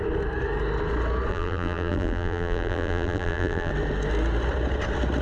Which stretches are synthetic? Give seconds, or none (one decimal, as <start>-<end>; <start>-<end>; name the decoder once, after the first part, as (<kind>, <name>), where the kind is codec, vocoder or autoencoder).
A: 1.3-3.7 (vocoder, BigVGAN v2)